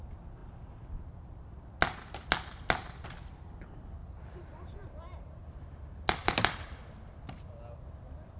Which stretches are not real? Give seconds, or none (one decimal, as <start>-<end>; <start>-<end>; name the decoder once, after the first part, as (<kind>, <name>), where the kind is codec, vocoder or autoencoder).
0.4-1.3 (vocoder, BigVGAN v2); 4.0-5.4; 6.2-7.2